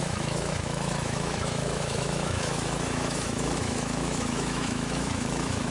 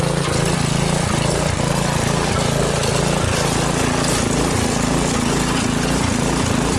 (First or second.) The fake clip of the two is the first